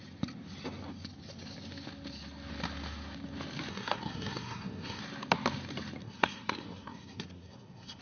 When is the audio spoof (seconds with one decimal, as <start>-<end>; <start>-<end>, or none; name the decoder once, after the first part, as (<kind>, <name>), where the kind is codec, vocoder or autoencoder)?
3.7-5.0 (codec, SNAC); 6.0-8.0

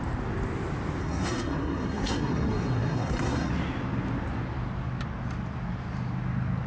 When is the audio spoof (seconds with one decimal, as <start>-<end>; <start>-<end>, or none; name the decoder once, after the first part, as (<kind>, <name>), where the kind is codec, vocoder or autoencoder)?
1.0-3.5 (codec, SNAC)

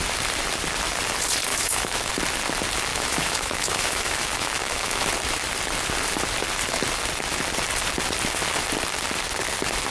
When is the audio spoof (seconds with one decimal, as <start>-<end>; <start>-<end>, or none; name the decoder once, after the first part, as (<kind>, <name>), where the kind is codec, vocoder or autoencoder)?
1.5-2.1 (autoencoder, DAC-VAE); 2.9-5.1

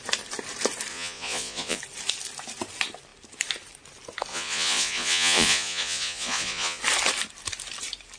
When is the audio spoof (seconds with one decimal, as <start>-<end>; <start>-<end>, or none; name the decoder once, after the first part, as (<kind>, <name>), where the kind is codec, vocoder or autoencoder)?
0.9-1.8 (vocoder, Vocos); 4.3-6.8

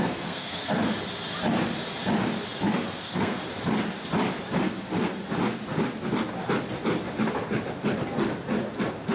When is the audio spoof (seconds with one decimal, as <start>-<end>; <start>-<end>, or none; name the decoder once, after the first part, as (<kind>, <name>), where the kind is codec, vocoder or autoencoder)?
0.0-0.8 (codec, SNAC); 2.7-3.4; 4.6-5.2

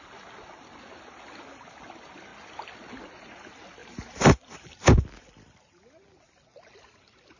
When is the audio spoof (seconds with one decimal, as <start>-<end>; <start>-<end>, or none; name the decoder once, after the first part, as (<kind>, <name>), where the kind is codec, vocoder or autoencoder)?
3.8-4.5 (vocoder, BigVGAN v2)

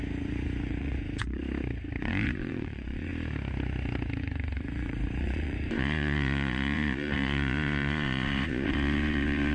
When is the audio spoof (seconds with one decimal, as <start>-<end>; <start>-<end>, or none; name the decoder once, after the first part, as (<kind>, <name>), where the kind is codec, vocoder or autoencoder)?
0.0-1.4 (vocoder, Vocos); 2.0-3.1; 4.2-9.5